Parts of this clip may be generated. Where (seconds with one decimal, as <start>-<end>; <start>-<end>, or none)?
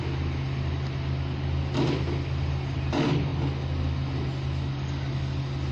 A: none